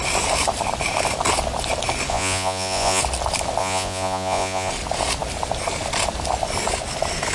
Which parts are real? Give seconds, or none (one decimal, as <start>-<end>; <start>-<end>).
0.0-2.1; 3.0-3.6; 4.7-7.3